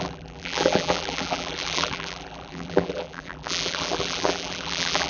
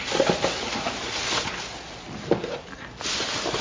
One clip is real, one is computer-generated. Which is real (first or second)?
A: second